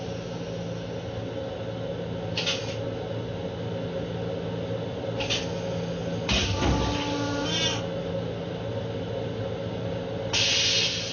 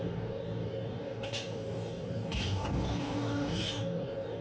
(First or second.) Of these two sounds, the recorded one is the first